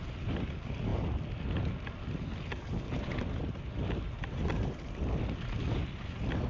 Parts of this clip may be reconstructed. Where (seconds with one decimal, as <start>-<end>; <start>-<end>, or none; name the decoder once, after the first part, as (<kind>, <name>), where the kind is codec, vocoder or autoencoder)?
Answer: none